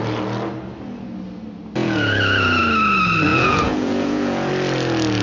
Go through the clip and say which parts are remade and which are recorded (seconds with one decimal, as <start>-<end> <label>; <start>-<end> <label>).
0.0-1.8 recorded; 1.8-2.6 remade; 2.6-3.3 recorded; 3.3-4.5 remade; 4.5-5.2 recorded